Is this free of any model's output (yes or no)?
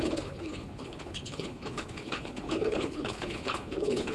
no